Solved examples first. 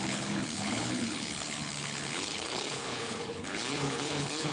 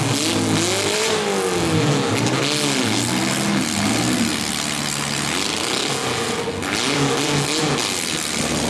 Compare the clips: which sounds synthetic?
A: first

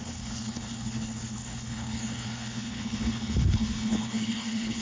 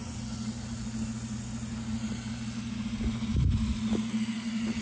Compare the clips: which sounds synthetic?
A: first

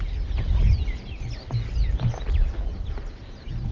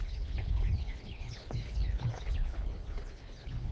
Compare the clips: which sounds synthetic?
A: second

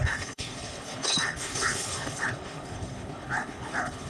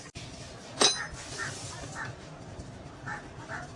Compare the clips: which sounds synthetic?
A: first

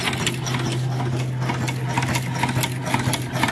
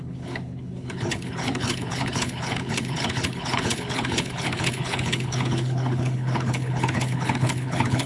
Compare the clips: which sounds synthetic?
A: second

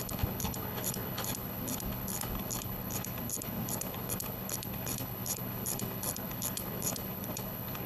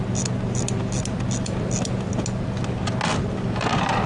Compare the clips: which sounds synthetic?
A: first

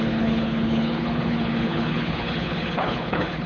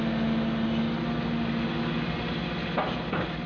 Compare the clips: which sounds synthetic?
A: first